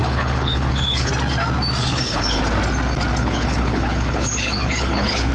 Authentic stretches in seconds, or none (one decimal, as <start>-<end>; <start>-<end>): 1.1-1.8; 2.4-3.2